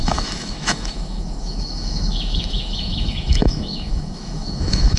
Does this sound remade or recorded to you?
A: remade